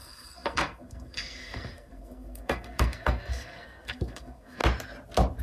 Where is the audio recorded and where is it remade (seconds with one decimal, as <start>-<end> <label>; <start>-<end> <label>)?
0.0-4.6 remade; 4.6-5.4 recorded